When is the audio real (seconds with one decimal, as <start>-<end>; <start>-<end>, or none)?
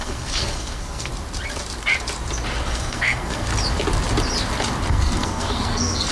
1.1-2.7; 3.5-4.9